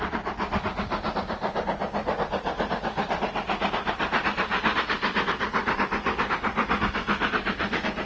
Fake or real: real